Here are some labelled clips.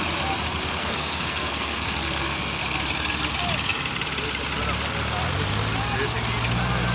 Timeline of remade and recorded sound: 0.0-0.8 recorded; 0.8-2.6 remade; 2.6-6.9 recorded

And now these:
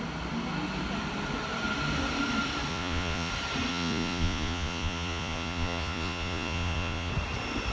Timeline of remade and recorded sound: 0.0-2.7 recorded; 2.7-3.3 remade; 3.3-3.7 recorded; 3.7-7.1 remade; 7.1-7.7 recorded